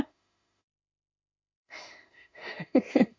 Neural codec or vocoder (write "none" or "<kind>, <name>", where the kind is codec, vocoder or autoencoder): autoencoder, DAC-VAE